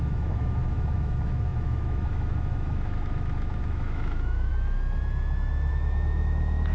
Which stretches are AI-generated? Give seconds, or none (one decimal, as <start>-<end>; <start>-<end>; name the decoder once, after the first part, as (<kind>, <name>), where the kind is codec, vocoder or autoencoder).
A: 0.0-4.5 (autoencoder, DAC-VAE); 5.7-6.7